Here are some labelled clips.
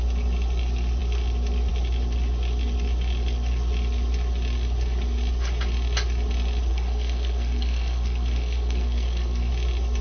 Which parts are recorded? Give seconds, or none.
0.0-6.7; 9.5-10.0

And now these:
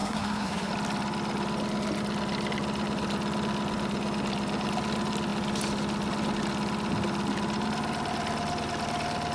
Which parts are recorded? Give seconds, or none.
0.7-9.3

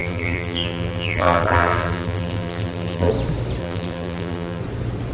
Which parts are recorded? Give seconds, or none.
3.1-3.6; 4.6-5.1

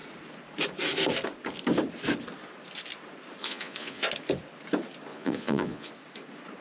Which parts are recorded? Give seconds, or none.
0.0-3.4; 4.0-5.1; 5.9-6.6